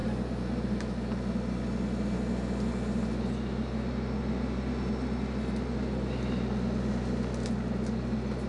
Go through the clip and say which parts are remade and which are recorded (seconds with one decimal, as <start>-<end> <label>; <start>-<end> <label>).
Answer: 0.0-8.5 recorded